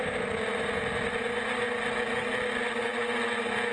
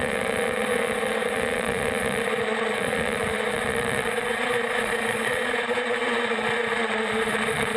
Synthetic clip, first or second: second